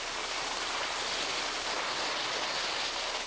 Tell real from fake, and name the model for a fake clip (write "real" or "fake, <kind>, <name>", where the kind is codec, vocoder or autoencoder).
real